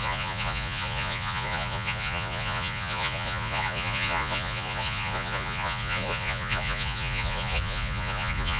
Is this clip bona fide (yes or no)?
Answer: no